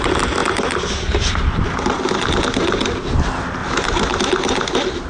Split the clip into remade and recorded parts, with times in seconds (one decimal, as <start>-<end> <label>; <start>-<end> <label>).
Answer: 0.0-5.1 recorded